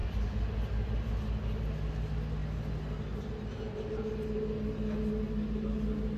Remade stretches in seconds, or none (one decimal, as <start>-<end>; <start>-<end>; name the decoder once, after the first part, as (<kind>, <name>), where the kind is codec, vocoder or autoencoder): none